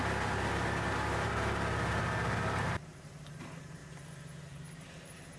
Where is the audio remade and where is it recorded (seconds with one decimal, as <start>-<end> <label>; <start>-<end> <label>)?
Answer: 0.0-2.6 recorded; 2.6-3.8 remade; 3.8-5.4 recorded